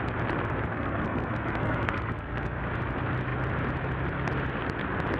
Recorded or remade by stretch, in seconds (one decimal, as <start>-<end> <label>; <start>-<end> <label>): 0.0-0.7 recorded; 0.7-2.6 remade; 2.6-5.2 recorded